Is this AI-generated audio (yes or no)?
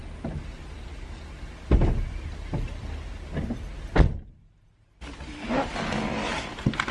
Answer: no